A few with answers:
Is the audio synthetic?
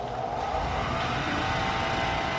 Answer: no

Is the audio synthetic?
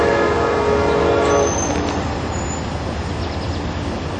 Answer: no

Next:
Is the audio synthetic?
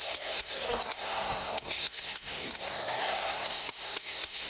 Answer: yes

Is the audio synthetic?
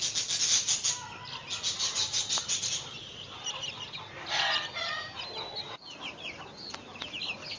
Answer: no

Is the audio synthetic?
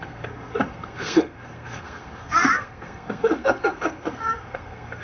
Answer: yes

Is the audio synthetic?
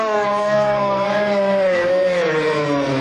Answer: yes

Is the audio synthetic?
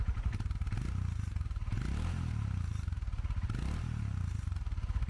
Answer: no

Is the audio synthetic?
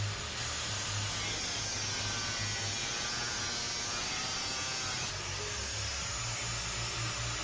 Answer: no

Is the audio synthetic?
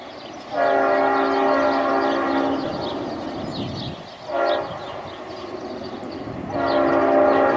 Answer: no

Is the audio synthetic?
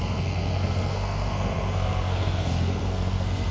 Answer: yes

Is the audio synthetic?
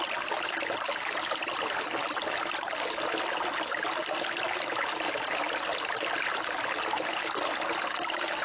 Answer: no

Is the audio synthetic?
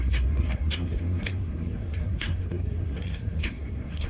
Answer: yes